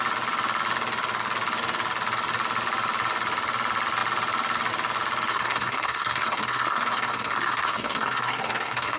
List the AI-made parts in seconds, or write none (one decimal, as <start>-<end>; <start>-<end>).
5.3-9.0